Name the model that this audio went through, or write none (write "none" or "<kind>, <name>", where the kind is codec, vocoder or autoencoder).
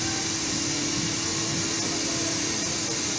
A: none